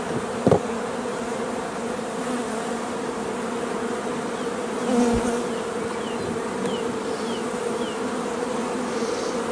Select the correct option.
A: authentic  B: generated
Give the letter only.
A